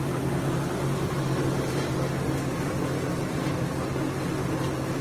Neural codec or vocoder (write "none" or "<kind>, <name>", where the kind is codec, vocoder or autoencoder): none